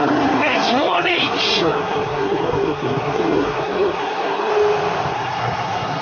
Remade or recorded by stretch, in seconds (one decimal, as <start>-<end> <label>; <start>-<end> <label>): 0.0-4.5 remade; 4.5-5.1 recorded; 5.1-6.0 remade